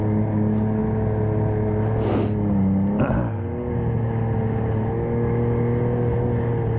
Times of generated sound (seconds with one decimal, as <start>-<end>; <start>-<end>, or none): none